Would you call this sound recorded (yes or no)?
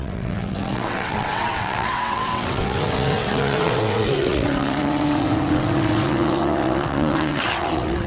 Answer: no